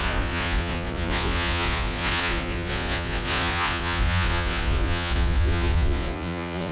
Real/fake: fake